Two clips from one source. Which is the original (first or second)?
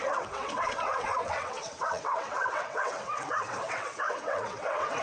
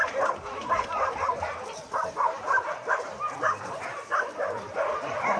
second